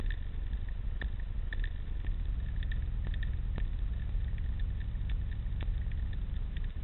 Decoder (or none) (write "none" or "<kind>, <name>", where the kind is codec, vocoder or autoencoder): none